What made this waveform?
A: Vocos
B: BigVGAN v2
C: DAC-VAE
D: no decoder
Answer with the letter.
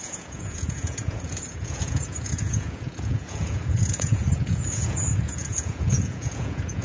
A